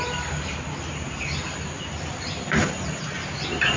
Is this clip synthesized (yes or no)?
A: no